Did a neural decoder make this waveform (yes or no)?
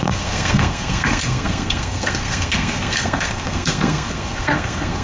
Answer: yes